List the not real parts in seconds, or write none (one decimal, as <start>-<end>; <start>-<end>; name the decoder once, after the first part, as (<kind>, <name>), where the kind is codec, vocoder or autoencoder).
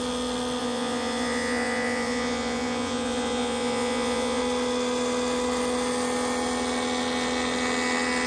0.6-4.4 (vocoder, Vocos)